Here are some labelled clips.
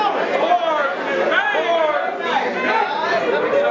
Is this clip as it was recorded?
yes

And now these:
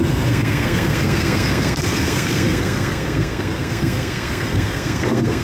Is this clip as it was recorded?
no